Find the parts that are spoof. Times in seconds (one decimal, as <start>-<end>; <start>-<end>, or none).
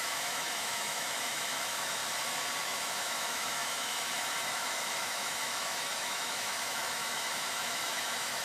0.0-2.0; 2.6-8.4